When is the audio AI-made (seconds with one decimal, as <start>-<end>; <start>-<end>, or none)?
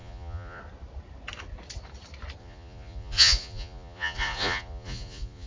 0.0-0.6; 2.4-5.5